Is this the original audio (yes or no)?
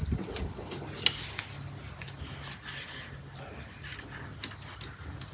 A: yes